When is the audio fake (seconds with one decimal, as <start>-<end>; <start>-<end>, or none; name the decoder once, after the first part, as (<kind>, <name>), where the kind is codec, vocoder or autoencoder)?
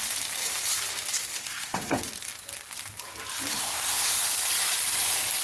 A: 1.4-2.0 (codec, SNAC); 3.5-4.1